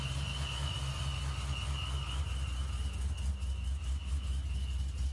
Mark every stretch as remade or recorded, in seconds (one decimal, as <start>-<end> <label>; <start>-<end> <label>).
0.0-5.1 recorded